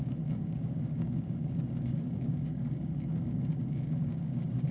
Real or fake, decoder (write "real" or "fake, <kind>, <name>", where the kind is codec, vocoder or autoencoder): fake, codec, DAC